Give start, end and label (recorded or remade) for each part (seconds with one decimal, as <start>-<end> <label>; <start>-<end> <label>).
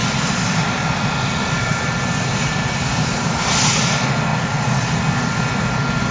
0.0-3.7 remade; 3.7-4.3 recorded; 4.3-5.0 remade; 5.0-6.1 recorded